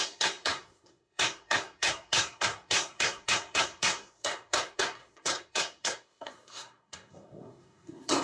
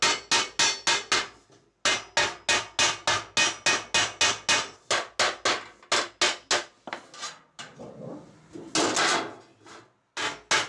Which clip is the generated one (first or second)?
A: first